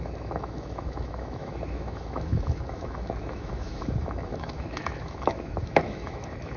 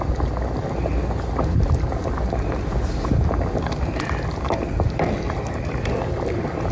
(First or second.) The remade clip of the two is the first